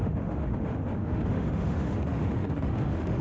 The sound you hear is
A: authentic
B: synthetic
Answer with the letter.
B